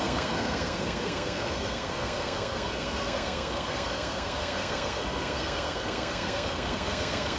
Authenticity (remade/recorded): remade